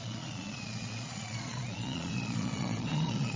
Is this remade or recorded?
remade